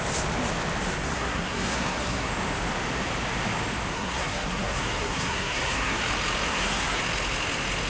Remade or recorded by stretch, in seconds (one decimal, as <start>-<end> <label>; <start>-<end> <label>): 0.0-1.0 recorded; 1.0-2.3 remade; 2.3-3.9 recorded; 3.9-6.0 remade; 6.0-6.5 recorded; 6.5-7.0 remade; 7.0-7.9 recorded